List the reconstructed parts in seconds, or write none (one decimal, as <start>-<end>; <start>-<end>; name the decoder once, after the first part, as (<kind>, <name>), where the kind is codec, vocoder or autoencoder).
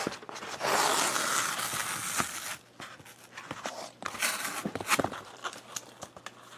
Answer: none